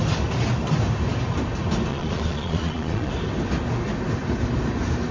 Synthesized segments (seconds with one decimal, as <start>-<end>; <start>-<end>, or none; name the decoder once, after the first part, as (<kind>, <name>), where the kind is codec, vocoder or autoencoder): 1.9-3.1 (vocoder, Vocos)